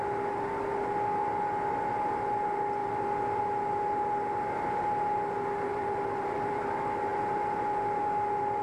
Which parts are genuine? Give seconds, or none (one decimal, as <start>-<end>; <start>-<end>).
0.0-2.8; 3.4-5.7; 6.6-8.6